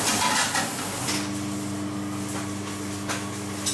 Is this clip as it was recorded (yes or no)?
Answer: yes